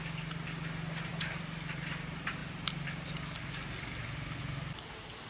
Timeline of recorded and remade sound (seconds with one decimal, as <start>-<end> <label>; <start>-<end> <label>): 0.0-1.1 recorded; 1.1-1.8 remade; 1.8-5.3 recorded